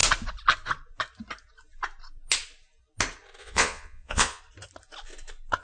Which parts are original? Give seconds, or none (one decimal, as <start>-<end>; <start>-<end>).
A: 0.0-3.4; 4.4-5.6